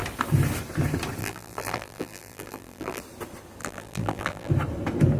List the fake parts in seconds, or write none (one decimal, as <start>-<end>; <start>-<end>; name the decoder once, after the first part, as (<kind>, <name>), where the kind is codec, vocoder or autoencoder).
1.2-3.0 (vocoder, BigVGAN v2); 3.6-4.5